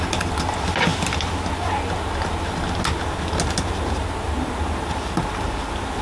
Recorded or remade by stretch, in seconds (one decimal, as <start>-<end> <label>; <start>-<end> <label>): 0.0-6.0 recorded